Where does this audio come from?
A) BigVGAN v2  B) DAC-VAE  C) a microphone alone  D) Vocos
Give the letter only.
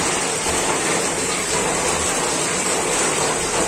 C